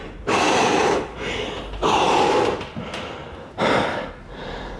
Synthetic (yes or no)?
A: no